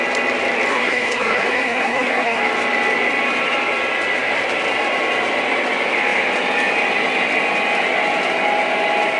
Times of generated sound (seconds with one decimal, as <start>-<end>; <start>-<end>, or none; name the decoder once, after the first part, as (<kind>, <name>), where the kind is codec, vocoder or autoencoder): 0.7-2.4 (codec, SNAC)